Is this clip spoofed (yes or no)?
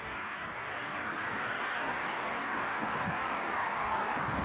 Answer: yes